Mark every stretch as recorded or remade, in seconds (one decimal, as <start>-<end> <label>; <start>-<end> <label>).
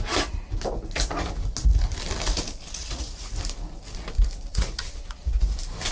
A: 0.0-2.8 recorded; 2.8-3.3 remade; 3.3-4.5 recorded; 4.5-5.4 remade; 5.4-5.9 recorded